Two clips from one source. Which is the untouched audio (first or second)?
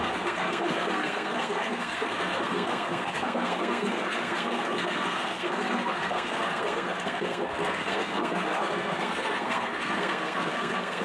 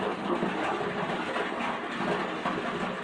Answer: second